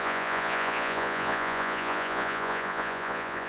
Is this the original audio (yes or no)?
no